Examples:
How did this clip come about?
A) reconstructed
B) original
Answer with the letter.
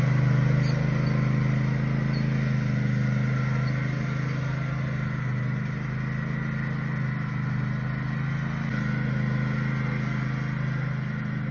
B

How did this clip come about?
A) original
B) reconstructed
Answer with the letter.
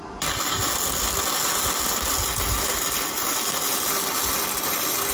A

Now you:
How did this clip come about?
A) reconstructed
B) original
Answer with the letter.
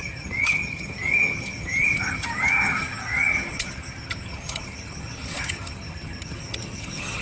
A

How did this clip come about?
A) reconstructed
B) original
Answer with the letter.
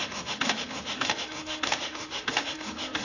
A